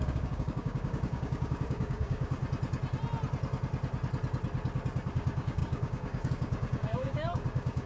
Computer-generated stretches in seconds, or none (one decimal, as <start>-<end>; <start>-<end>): 0.0-2.4; 5.1-7.9